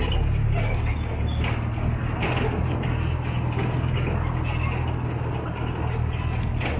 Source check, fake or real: real